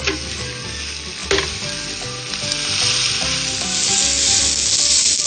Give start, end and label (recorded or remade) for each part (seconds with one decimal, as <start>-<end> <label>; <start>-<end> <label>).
0.0-5.3 recorded